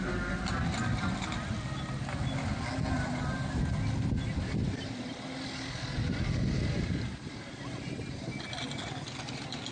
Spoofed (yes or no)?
no